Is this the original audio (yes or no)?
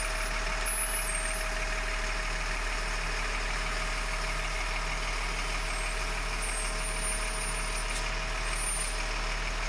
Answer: yes